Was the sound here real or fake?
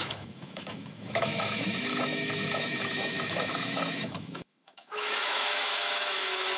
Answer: fake